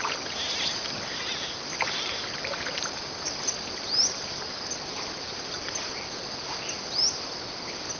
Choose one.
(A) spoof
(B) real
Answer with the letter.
A